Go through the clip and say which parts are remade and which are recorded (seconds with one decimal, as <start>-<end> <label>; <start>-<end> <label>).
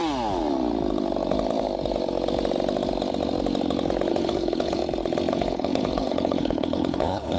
0.0-4.1 recorded; 4.1-4.8 remade; 4.8-5.3 recorded; 5.3-7.4 remade